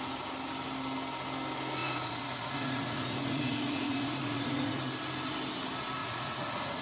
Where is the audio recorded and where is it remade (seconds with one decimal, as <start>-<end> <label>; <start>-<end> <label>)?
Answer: 0.0-1.8 recorded; 1.8-4.8 remade; 4.8-6.0 recorded; 6.0-6.8 remade

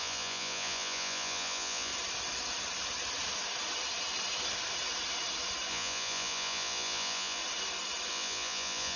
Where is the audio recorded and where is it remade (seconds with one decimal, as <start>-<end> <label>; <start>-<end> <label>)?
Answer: 0.0-1.9 remade; 1.9-5.7 recorded; 5.7-7.4 remade; 7.4-8.1 recorded; 8.1-9.0 remade

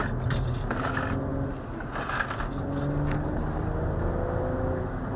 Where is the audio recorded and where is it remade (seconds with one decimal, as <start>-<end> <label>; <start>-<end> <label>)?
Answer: 0.0-5.2 recorded

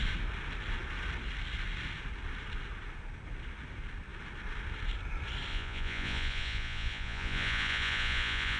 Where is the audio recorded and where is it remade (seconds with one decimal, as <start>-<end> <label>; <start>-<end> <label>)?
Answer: 0.0-5.5 recorded; 5.5-8.6 remade